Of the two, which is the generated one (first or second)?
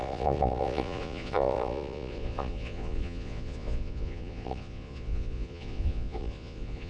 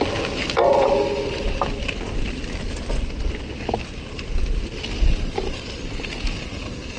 first